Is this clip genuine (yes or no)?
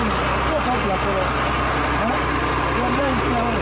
yes